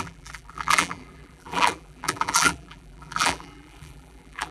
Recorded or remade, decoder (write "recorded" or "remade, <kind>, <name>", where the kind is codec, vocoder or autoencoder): remade, vocoder, BigVGAN v2